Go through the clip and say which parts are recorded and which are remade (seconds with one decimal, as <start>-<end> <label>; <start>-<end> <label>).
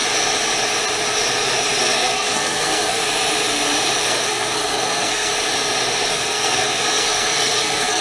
0.0-1.8 recorded; 1.8-3.0 remade; 3.0-4.0 recorded; 4.0-5.3 remade; 5.3-6.1 recorded; 6.1-8.0 remade